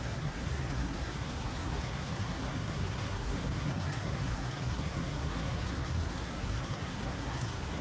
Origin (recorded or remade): remade